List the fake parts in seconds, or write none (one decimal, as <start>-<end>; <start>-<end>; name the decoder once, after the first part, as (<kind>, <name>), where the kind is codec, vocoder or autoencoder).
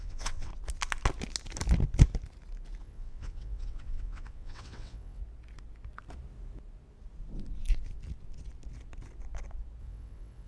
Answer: 0.0-0.5 (vocoder, WaveNeXt); 2.8-5.2; 9.8-10.5